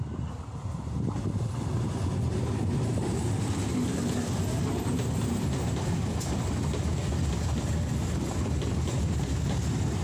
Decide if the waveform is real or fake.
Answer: real